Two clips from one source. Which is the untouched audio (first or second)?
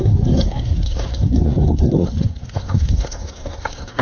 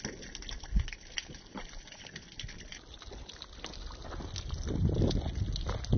second